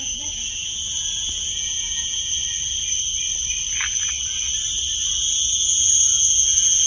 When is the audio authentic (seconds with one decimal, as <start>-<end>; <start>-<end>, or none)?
2.3-5.2